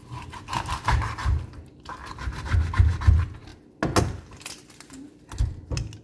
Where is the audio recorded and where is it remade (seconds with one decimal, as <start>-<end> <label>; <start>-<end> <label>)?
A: 0.0-6.0 recorded